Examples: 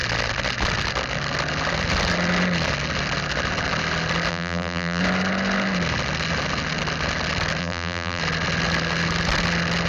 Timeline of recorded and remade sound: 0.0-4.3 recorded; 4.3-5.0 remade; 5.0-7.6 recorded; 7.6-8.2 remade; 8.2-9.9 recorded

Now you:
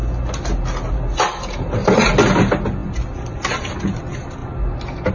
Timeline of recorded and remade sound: 0.0-2.8 recorded; 2.8-4.0 remade; 4.0-5.1 recorded